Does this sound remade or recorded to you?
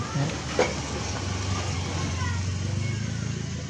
recorded